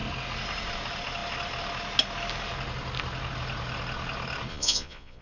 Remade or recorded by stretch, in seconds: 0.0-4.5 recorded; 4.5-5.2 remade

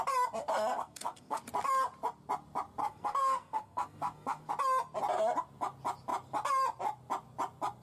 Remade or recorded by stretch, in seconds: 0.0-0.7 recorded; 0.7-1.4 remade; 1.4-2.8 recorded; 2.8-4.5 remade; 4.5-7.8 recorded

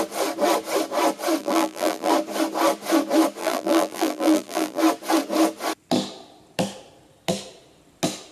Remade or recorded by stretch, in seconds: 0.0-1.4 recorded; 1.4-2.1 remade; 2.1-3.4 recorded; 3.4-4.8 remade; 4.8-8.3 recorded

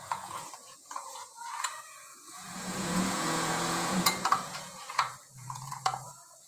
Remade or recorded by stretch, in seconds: 0.0-6.5 remade

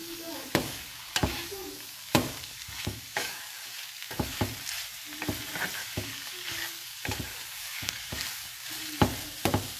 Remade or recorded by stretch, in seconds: 0.0-4.4 remade; 4.4-5.8 recorded; 5.8-8.7 remade; 8.7-9.8 recorded

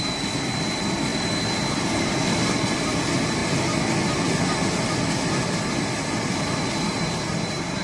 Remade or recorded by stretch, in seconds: 0.0-7.8 recorded

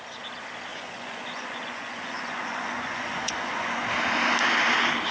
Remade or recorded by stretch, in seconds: 0.0-0.7 recorded; 0.7-3.8 remade; 3.8-5.1 recorded